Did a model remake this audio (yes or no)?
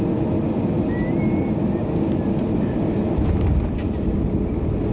no